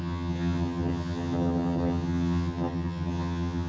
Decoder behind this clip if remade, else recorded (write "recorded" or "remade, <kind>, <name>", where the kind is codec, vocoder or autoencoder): remade, vocoder, HiFi-GAN